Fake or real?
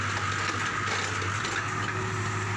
real